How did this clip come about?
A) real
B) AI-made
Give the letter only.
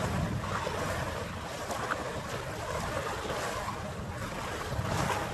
A